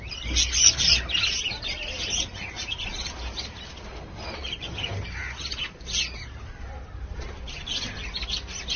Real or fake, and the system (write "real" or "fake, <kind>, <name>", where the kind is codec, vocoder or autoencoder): real